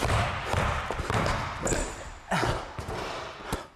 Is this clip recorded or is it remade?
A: remade